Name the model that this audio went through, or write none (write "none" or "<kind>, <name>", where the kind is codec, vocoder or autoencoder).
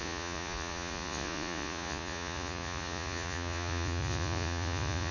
vocoder, Vocos